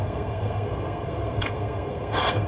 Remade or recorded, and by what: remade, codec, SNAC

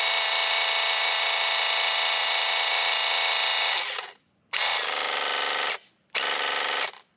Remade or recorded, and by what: recorded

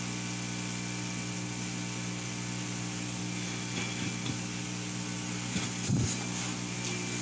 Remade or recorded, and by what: recorded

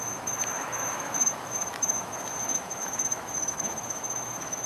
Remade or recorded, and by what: remade, autoencoder, DAC-VAE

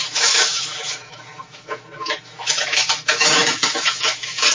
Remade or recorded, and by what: remade, autoencoder, DAC-VAE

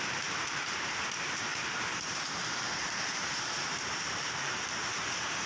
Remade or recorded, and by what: remade, vocoder, BigVGAN v2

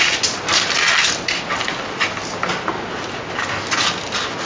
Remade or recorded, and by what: recorded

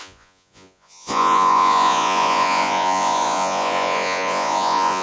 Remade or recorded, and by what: remade, vocoder, Vocos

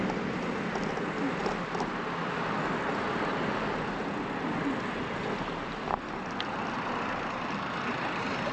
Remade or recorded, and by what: recorded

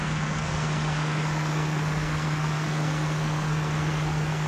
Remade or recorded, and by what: remade, codec, SNAC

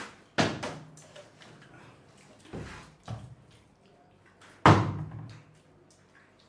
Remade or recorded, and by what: recorded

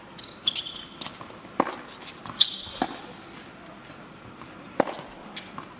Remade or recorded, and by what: recorded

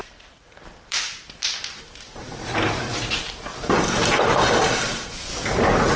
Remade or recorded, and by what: remade, vocoder, BigVGAN v2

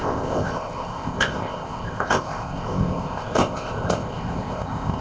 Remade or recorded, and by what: remade, codec, ZipCodec